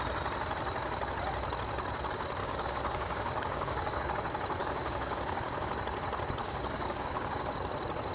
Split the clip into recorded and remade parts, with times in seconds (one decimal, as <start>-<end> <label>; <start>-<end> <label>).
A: 0.0-2.4 recorded; 2.4-4.0 remade; 4.0-4.6 recorded; 4.6-5.7 remade; 5.7-6.4 recorded; 6.4-7.4 remade; 7.4-8.1 recorded